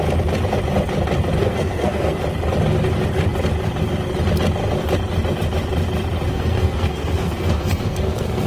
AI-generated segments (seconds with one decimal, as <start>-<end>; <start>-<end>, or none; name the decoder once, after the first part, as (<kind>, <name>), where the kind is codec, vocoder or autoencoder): 1.4-2.2 (codec, SNAC); 6.3-8.5